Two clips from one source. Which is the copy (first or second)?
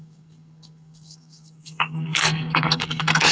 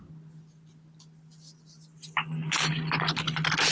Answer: first